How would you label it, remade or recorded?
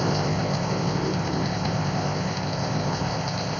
remade